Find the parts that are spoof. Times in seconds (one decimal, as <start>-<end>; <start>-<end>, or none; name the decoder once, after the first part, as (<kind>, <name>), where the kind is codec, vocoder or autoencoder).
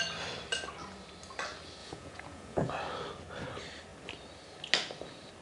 1.8-2.7 (vocoder, Vocos)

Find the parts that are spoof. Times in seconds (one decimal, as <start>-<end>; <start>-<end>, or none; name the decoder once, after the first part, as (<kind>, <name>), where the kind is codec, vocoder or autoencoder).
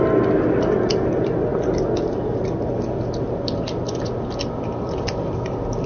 none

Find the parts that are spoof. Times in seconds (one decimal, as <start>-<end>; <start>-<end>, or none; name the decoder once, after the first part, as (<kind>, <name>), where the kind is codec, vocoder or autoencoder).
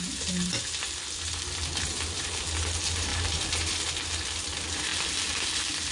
none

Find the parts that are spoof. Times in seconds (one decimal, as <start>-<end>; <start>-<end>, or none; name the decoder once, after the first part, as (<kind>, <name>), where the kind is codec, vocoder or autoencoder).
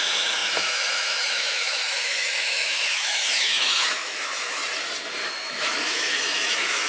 0.0-4.6 (autoencoder, DAC-VAE); 5.3-6.9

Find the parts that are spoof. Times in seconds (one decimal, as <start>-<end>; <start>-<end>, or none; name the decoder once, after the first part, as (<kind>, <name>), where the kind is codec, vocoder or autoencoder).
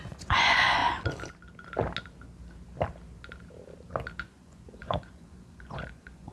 0.0-0.8 (vocoder, Vocos); 4.2-6.3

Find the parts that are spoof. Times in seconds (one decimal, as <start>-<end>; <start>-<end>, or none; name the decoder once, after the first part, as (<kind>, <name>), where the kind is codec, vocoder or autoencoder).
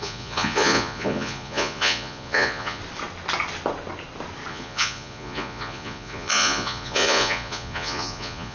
0.0-2.8 (vocoder, Vocos); 4.5-8.5